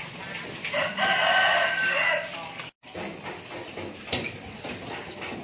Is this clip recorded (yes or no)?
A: yes